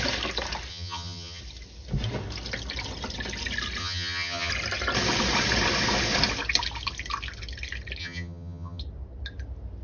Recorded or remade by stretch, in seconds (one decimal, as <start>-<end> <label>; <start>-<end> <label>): 0.0-0.7 recorded; 0.7-1.4 remade; 1.4-3.8 recorded; 3.8-4.5 remade; 4.5-8.0 recorded; 8.0-8.8 remade; 8.8-9.8 recorded